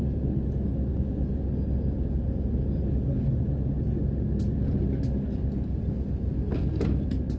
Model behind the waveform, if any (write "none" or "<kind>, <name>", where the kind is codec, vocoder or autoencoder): none